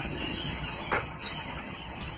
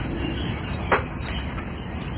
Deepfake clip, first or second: first